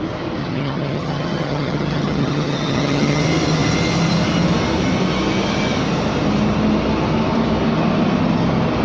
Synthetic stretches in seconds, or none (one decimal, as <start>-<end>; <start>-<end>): 0.4-3.2